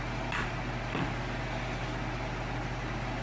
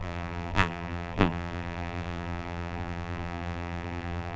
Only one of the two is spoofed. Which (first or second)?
second